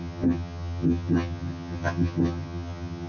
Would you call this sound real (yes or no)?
no